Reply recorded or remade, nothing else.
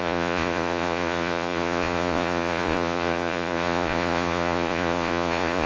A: remade